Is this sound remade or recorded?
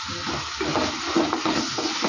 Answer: recorded